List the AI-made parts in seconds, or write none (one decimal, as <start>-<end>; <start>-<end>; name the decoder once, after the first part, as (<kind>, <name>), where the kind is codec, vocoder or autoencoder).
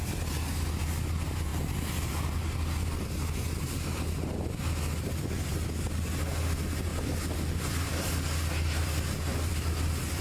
6.9-7.9 (vocoder, BigVGAN v2); 8.8-10.2